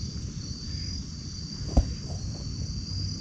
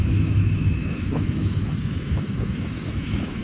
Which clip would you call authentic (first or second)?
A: first